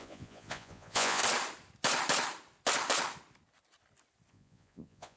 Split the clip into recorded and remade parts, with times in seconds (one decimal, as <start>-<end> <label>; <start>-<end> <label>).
0.0-1.2 remade; 1.2-4.3 recorded; 4.3-5.2 remade